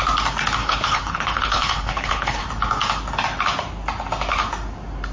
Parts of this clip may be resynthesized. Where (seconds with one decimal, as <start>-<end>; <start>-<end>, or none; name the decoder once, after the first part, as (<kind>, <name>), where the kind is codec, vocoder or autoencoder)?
0.6-2.4 (codec, HILCodec)